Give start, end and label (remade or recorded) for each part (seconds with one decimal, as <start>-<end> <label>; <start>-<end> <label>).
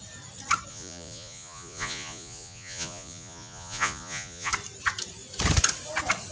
0.0-0.7 recorded; 0.7-4.5 remade; 4.5-6.3 recorded